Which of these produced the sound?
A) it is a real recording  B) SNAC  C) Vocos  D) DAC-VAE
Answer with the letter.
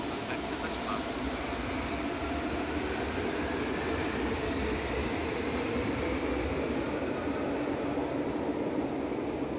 A